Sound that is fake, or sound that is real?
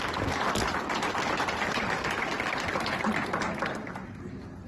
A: real